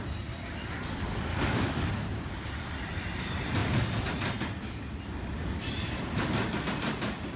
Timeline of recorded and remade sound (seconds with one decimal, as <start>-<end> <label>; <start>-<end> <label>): 0.0-1.3 recorded; 1.3-1.9 remade; 1.9-7.4 recorded